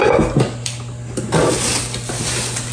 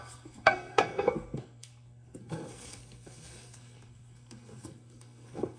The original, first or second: first